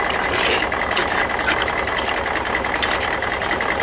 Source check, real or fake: real